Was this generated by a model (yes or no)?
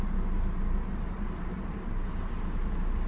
no